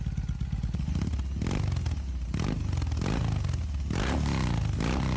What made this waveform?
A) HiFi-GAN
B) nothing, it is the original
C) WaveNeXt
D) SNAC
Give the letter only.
B